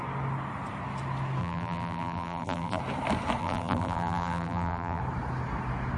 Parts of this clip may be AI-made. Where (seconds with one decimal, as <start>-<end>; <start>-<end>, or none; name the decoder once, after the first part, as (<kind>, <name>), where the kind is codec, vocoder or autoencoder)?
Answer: 1.4-2.8 (vocoder, BigVGAN v2); 3.4-5.0